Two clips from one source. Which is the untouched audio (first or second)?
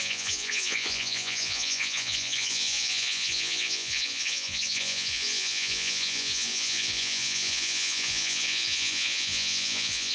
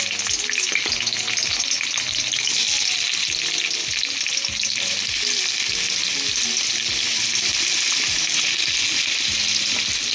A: second